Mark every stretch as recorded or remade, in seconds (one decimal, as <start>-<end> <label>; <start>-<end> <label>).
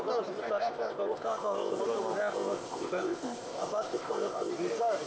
0.0-0.4 recorded; 0.4-1.8 remade; 1.8-2.2 recorded; 2.2-4.5 remade; 4.5-5.1 recorded